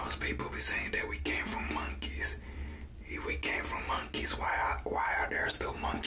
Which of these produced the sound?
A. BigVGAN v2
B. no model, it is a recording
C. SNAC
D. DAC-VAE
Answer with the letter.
B